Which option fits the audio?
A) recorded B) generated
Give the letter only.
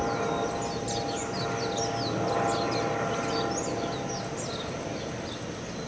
A